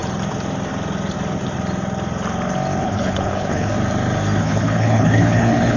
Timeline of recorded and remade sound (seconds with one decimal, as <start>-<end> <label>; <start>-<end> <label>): 0.0-2.8 recorded; 2.8-3.7 remade; 3.7-4.4 recorded; 4.4-5.8 remade